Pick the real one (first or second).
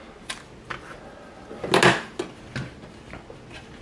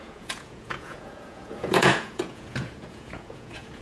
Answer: first